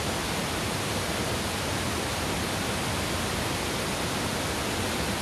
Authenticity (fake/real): real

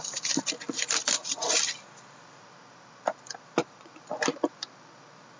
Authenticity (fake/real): fake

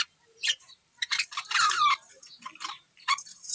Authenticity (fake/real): fake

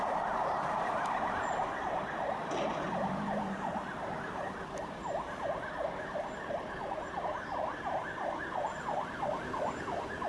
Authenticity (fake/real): fake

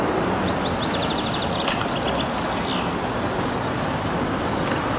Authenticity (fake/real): real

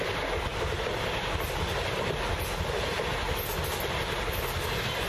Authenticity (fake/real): real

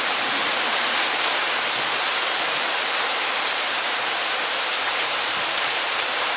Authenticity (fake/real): fake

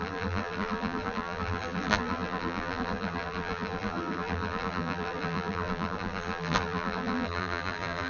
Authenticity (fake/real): fake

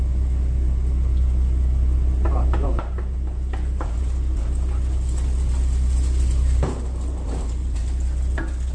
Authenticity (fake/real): real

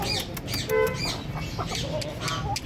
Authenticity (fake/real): real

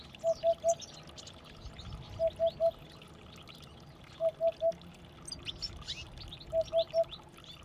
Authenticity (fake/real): real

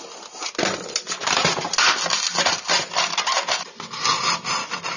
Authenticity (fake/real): real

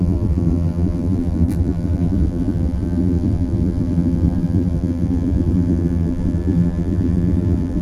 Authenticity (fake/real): fake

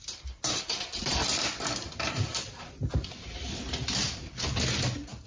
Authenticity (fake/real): fake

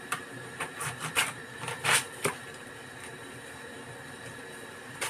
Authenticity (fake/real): real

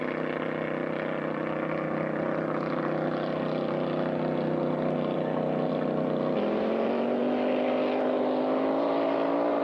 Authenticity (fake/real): real